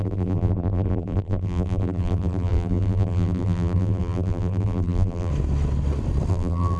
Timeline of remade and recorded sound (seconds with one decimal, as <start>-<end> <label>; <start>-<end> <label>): 0.0-5.3 remade; 5.3-6.3 recorded; 6.3-6.8 remade